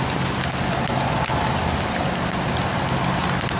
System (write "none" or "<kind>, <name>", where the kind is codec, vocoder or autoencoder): none